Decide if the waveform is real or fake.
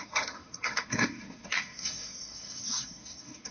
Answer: fake